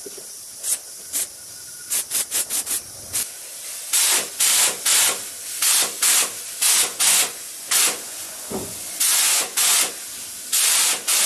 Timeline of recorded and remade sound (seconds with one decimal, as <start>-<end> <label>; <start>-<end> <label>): 0.0-6.9 recorded; 6.9-9.9 remade; 9.9-11.3 recorded